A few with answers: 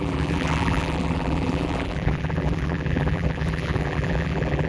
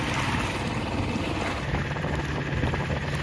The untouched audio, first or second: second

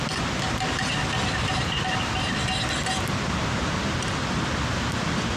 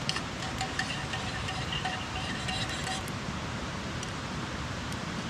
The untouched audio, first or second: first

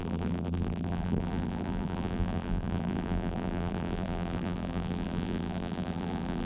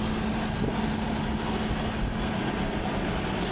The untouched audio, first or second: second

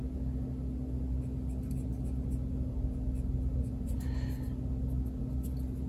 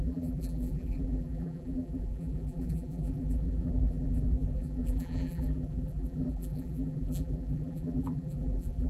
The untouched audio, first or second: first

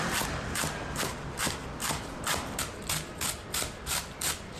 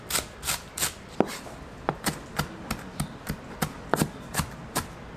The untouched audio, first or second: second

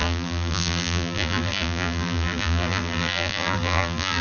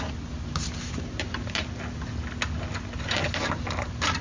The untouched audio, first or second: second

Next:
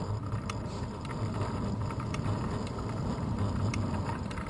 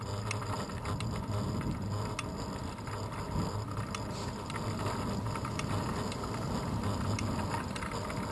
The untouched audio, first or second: second